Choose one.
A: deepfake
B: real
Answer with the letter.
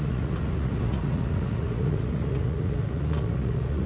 A